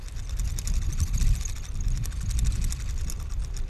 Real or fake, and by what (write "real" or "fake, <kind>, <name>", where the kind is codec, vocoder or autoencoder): real